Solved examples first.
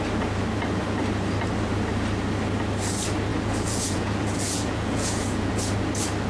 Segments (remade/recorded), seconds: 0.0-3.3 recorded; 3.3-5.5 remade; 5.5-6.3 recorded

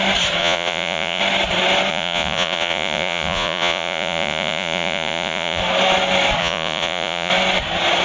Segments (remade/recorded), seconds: 0.0-0.4 recorded; 0.4-1.2 remade; 1.2-1.9 recorded; 1.9-5.6 remade; 5.6-6.4 recorded; 6.4-7.3 remade; 7.3-8.0 recorded

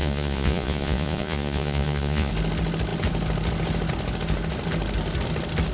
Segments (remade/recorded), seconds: 0.0-2.3 remade; 2.3-5.7 recorded